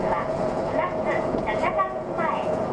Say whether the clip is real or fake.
fake